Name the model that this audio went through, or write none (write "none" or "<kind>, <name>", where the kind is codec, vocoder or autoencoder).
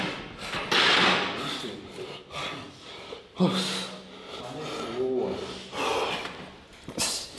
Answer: none